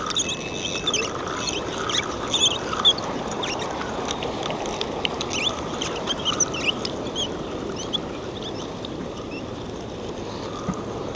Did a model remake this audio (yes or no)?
no